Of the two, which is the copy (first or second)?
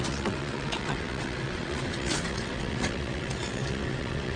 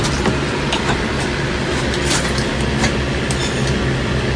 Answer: first